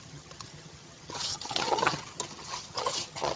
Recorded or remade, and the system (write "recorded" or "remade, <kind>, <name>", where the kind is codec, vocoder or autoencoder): remade, vocoder, HiFi-GAN